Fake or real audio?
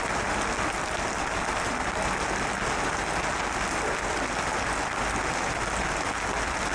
real